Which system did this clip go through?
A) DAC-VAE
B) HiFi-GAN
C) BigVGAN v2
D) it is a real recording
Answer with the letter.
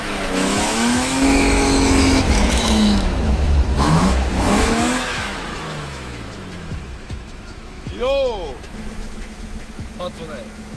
A